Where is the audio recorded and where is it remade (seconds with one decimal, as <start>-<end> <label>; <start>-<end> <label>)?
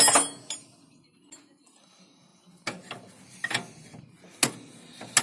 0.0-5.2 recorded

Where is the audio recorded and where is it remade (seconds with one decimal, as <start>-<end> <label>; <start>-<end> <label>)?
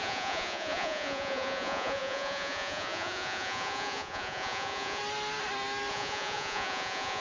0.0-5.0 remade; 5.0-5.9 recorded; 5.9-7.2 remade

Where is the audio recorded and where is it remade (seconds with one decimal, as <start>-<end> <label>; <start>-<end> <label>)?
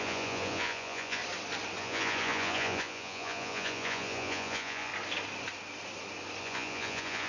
0.0-1.2 remade; 1.2-1.8 recorded; 1.8-4.9 remade; 4.9-6.4 recorded; 6.4-7.3 remade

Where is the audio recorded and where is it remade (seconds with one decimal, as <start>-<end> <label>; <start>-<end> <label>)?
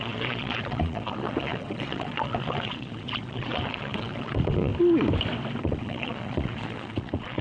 0.0-4.7 remade; 4.7-5.6 recorded; 5.6-7.4 remade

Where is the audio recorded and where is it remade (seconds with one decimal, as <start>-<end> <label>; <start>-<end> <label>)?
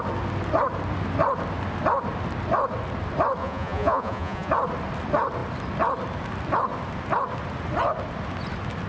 0.0-3.4 recorded; 3.4-4.5 remade; 4.5-8.9 recorded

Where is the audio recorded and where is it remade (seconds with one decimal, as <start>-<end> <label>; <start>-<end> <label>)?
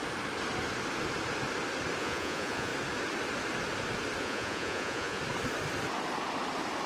0.0-2.0 recorded; 2.0-2.7 remade; 2.7-4.2 recorded; 4.2-5.2 remade; 5.2-6.9 recorded